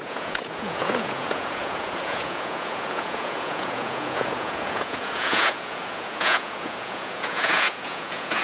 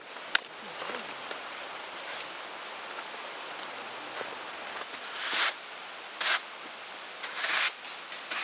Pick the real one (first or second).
second